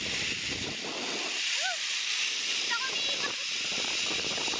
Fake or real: real